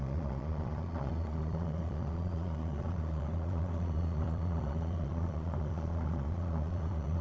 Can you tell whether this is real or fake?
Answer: fake